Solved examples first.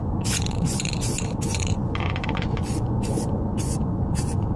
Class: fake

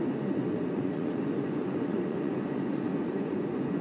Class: fake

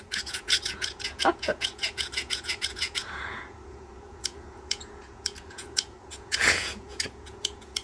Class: fake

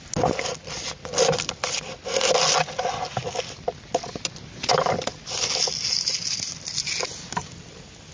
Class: real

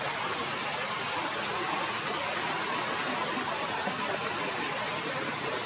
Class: real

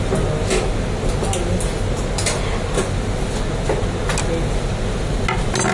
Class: real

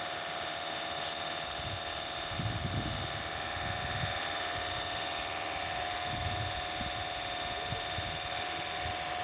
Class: real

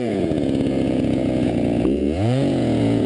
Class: fake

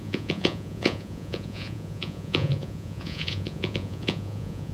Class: fake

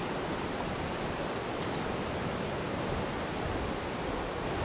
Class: real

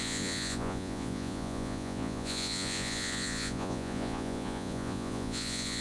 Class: fake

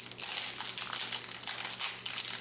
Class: real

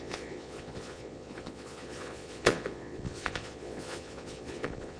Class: fake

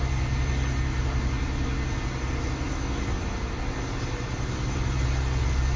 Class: real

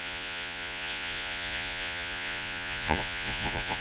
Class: fake